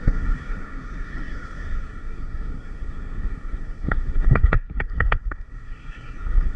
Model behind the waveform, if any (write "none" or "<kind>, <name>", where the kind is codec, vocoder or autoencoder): codec, SNAC